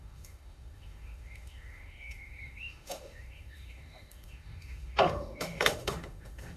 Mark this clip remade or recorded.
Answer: remade